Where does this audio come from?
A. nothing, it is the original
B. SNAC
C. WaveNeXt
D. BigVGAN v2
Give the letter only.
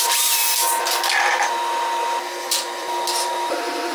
D